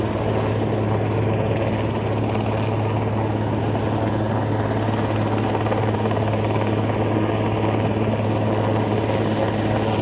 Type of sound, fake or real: real